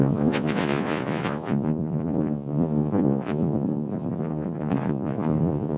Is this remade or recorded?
remade